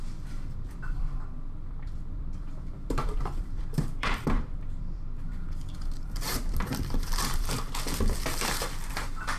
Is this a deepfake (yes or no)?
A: yes